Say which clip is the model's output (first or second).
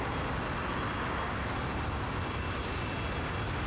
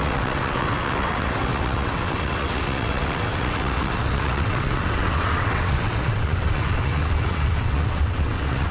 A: second